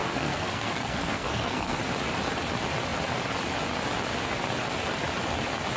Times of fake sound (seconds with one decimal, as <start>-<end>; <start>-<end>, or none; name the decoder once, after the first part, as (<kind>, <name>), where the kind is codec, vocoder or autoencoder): 0.0-1.8 (codec, SNAC)